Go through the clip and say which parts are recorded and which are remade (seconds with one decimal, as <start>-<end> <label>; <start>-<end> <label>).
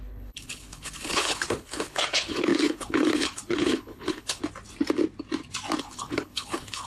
0.0-4.4 remade; 4.4-5.8 recorded; 5.8-6.9 remade